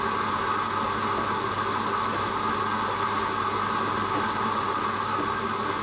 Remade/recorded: recorded